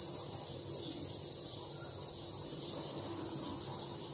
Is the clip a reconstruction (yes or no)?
no